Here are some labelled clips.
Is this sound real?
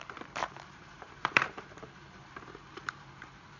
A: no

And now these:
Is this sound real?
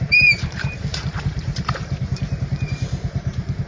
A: no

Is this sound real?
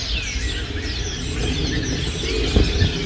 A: yes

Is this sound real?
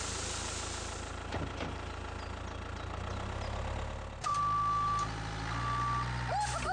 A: yes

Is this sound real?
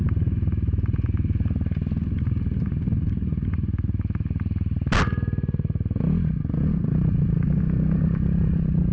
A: yes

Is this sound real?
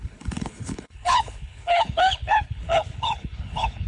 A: no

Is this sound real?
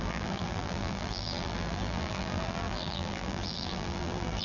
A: no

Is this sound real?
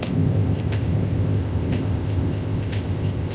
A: no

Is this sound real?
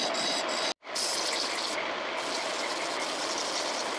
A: yes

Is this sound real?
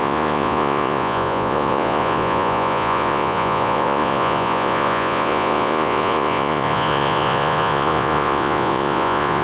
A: no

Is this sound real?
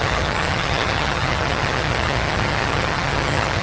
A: no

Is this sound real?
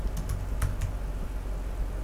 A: yes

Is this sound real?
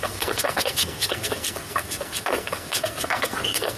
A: no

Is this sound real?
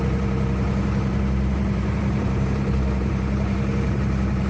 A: no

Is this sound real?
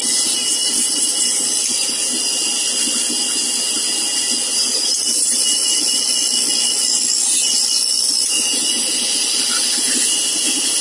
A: yes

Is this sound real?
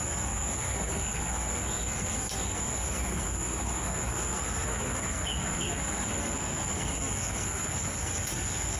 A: no